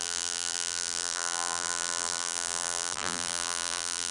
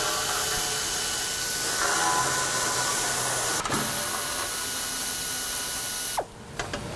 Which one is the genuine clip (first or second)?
second